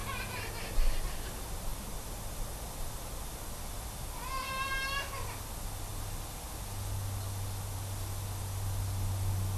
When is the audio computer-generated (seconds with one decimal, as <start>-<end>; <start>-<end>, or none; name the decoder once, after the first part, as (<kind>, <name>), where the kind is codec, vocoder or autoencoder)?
none